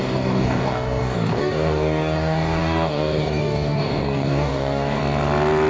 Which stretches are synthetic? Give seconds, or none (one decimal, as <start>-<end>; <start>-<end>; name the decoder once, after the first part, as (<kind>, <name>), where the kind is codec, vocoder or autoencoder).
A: 0.0-5.0 (codec, DAC)